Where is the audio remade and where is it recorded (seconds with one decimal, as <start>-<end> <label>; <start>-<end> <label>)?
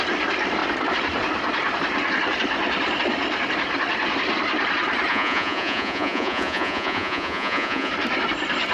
0.0-5.1 recorded; 5.1-7.9 remade; 7.9-8.7 recorded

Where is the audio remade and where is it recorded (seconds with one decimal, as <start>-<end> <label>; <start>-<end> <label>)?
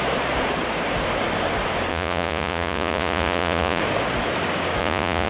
0.0-1.9 recorded; 1.9-3.8 remade; 3.8-4.8 recorded; 4.8-5.3 remade